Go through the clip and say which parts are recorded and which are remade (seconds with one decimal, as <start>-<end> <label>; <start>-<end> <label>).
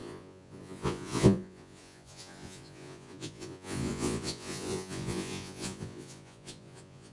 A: 0.0-7.1 remade